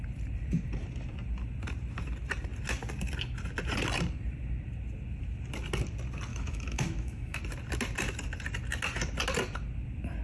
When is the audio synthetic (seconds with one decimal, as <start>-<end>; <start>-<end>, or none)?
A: 6.3-7.4